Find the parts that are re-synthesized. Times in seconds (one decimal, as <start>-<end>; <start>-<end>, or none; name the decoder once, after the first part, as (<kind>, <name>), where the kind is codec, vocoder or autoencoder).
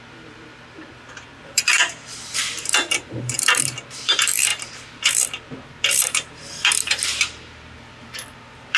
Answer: 0.0-8.8 (vocoder, BigVGAN v2)